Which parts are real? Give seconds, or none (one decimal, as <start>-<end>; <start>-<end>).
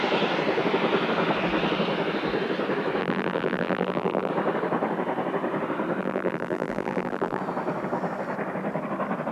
0.0-3.0; 4.3-6.0; 7.4-9.3